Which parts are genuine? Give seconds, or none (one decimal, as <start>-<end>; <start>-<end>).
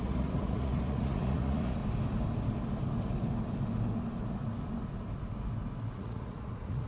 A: 1.8-5.9